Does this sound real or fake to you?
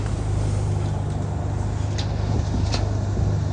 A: real